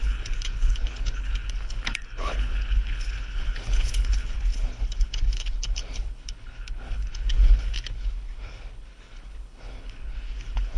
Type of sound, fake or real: fake